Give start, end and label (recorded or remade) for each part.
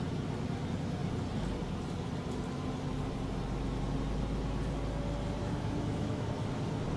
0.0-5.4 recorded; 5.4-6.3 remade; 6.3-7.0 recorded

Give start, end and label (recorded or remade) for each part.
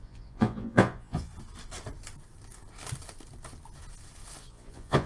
0.0-1.3 remade; 1.3-4.4 recorded; 4.4-5.1 remade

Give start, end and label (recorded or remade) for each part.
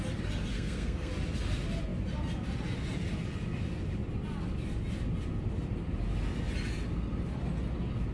0.0-0.5 recorded; 0.5-1.1 remade; 1.1-8.1 recorded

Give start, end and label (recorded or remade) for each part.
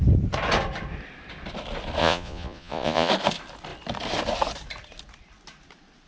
0.0-2.0 recorded; 2.0-3.1 remade; 3.1-6.1 recorded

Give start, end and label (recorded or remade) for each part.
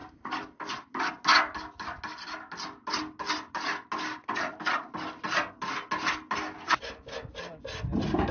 0.0-8.3 recorded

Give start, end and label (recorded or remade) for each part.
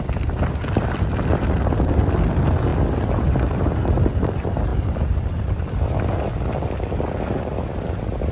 0.0-8.3 recorded